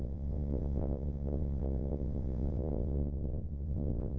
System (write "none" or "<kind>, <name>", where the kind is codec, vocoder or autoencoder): vocoder, WaveNeXt